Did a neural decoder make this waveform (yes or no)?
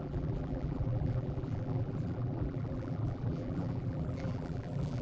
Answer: yes